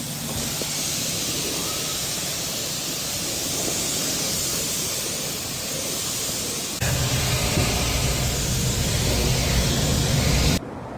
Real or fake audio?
real